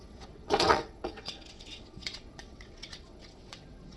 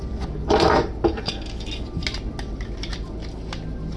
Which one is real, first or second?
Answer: second